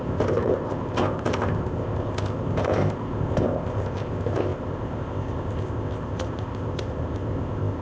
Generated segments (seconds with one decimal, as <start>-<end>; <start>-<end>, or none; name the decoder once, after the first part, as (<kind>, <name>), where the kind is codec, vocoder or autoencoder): 0.0-7.8 (codec, ZipCodec)